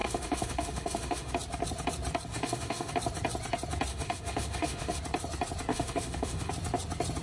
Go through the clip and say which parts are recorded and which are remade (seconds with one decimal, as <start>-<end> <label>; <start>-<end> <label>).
0.0-1.3 remade; 1.3-2.3 recorded; 2.3-2.9 remade; 2.9-3.9 recorded; 3.9-5.0 remade; 5.0-5.7 recorded; 5.7-6.5 remade; 6.5-7.2 recorded